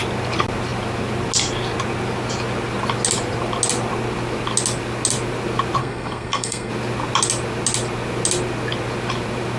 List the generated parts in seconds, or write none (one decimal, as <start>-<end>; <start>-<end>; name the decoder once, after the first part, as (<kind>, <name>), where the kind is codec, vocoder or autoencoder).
5.8-6.7 (codec, SNAC)